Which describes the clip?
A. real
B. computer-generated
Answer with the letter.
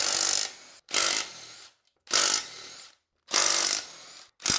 A